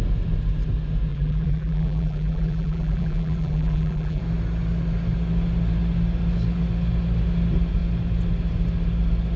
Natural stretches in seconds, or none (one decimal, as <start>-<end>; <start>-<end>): 0.0-1.1; 4.2-9.4